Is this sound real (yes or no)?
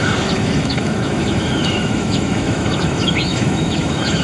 no